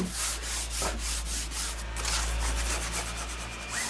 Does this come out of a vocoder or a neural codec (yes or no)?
no